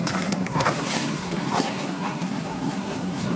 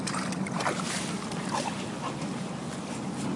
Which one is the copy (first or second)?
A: first